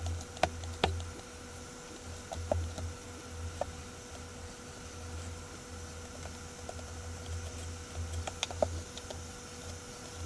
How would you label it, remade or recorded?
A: recorded